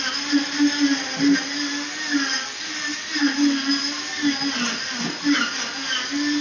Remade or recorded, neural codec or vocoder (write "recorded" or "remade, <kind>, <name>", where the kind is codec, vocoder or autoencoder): recorded